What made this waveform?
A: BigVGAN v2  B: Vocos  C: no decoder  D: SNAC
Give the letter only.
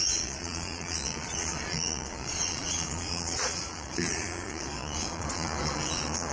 B